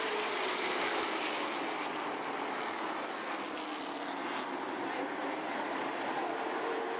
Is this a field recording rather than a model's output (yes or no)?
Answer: yes